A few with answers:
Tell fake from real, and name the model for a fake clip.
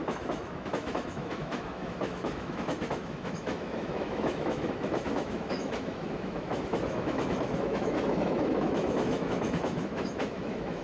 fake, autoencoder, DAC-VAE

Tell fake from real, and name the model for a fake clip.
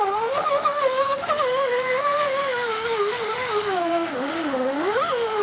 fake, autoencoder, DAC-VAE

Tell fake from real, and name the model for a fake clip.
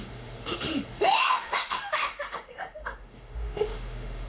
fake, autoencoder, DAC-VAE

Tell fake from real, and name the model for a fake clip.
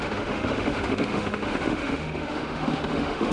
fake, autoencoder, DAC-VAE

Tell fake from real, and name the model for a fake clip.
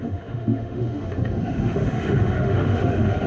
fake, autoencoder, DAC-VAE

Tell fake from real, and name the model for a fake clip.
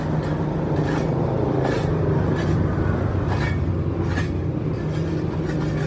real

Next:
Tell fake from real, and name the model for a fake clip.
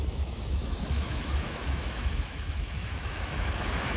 fake, autoencoder, DAC-VAE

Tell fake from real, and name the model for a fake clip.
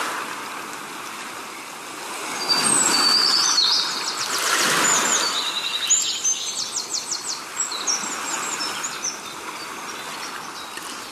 real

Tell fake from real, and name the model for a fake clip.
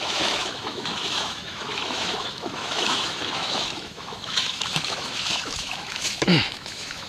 fake, autoencoder, DAC-VAE